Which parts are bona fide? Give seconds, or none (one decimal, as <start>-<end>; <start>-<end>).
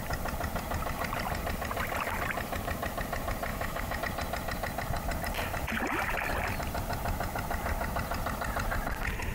0.0-3.5; 4.0-9.3